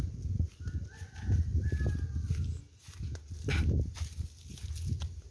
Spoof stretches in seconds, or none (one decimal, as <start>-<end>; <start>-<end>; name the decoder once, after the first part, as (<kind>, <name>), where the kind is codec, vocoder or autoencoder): none